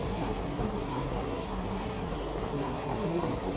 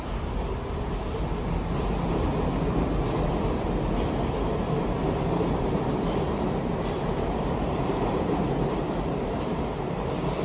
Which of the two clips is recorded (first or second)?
second